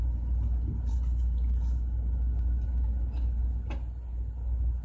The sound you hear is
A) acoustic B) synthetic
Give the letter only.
A